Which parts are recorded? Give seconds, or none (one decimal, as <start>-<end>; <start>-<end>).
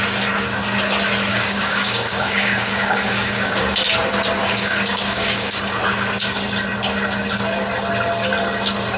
0.0-1.3; 3.9-4.4; 5.8-9.0